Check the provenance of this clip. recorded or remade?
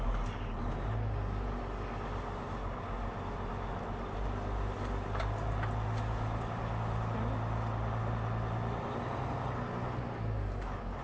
recorded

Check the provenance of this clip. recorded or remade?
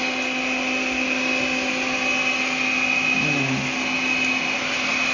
recorded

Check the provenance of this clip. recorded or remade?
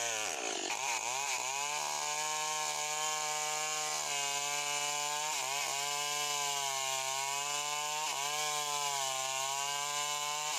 recorded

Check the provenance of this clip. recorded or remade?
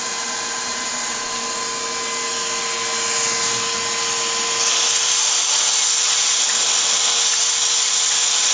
recorded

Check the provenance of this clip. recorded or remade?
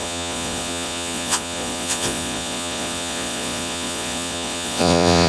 remade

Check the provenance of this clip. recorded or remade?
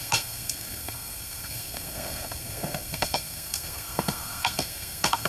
remade